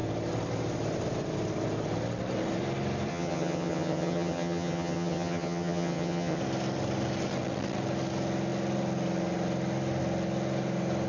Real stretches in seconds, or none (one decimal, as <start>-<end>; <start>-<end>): 0.0-3.1; 6.4-11.1